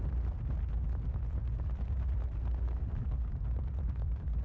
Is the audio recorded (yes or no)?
yes